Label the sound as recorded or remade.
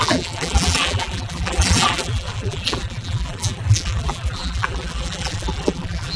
remade